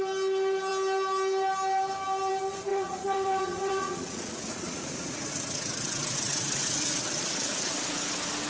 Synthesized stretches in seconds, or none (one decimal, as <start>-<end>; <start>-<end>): 2.7-7.7